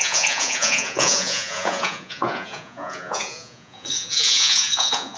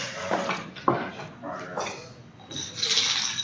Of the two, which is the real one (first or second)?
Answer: second